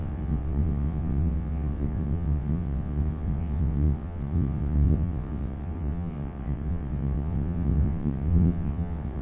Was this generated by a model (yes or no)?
yes